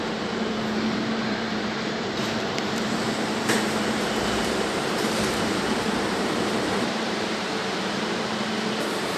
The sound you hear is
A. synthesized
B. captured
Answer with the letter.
A